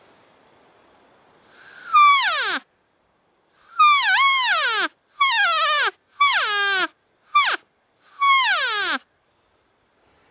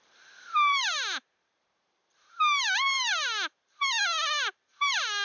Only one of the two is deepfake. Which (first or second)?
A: second